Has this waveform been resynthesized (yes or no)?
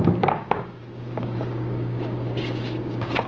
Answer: yes